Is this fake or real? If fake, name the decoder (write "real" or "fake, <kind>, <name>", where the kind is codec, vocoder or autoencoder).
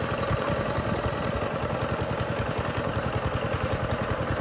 real